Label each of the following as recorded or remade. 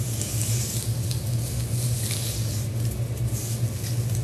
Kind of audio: recorded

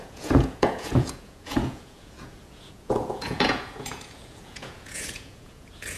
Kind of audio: remade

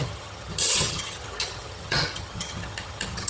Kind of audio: remade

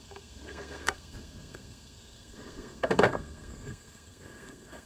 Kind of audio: remade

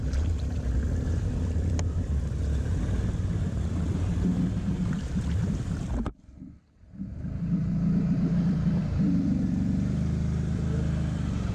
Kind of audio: remade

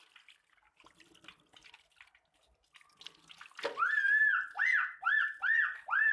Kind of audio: recorded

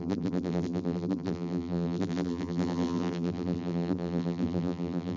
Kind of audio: remade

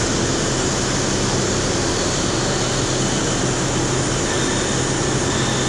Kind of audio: recorded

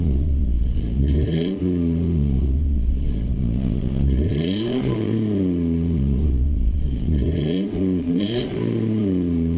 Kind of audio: remade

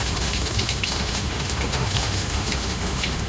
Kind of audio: remade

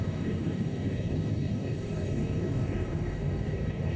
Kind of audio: remade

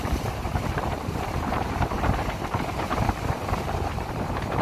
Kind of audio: remade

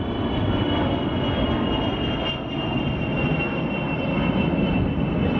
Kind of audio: recorded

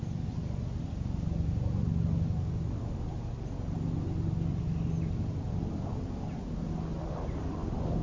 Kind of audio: recorded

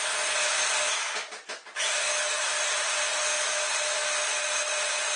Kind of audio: recorded